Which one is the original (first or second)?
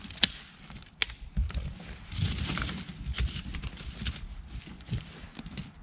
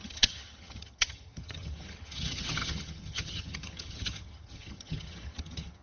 first